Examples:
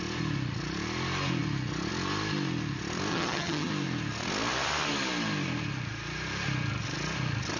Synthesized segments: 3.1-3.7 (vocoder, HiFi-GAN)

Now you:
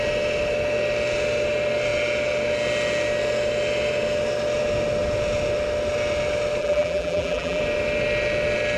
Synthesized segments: 6.6-7.6 (vocoder, BigVGAN v2)

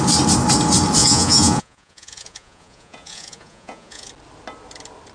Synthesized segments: 1.0-4.1 (vocoder, Vocos)

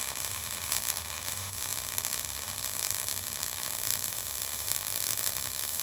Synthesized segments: 0.0-5.8 (autoencoder, DAC-VAE)

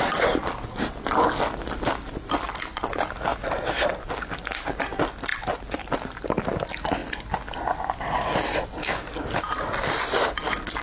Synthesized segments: none

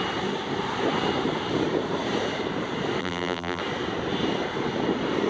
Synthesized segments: 3.0-3.6 (vocoder, BigVGAN v2)

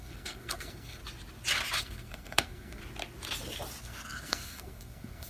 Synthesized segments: 0.0-1.0 (codec, SNAC); 1.8-2.8; 3.8-5.3

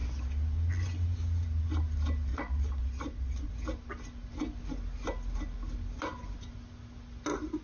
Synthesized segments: 2.3-3.5 (vocoder, Vocos)